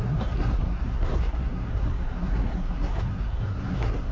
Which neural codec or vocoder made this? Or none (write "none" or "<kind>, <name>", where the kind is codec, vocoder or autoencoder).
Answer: codec, SNAC